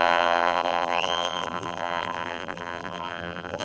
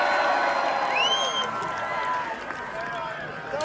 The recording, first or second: second